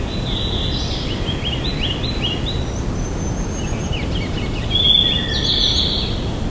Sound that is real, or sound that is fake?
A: real